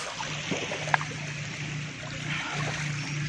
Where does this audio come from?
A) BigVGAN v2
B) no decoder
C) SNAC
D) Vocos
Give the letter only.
B